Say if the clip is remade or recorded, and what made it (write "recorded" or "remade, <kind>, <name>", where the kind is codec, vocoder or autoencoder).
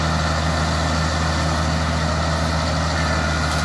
recorded